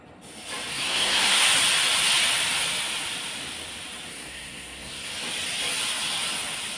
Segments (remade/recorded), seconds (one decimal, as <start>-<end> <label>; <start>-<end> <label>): 0.0-0.7 recorded; 0.7-1.4 remade; 1.4-4.1 recorded; 4.1-5.1 remade; 5.1-6.8 recorded

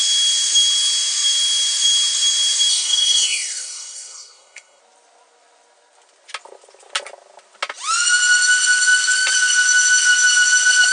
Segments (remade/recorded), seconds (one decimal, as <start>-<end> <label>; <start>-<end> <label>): 0.0-2.7 recorded; 2.7-4.8 remade; 4.8-10.9 recorded